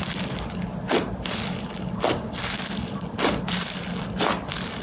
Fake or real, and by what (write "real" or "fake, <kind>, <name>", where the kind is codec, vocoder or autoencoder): real